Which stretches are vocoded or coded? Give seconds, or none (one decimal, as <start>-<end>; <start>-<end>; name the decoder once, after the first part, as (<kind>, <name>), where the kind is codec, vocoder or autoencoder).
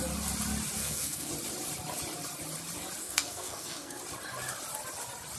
0.8-1.3 (codec, SNAC); 3.0-4.0